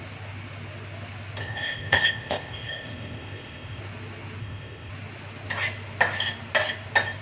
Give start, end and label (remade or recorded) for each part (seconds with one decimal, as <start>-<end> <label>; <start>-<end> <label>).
0.0-1.4 recorded; 1.4-3.8 remade; 3.8-4.4 recorded; 4.4-4.9 remade; 4.9-7.2 recorded